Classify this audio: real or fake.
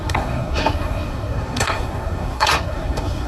fake